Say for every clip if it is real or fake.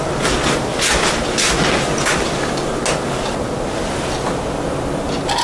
real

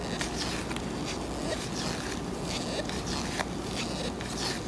real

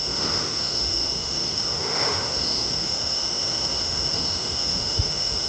fake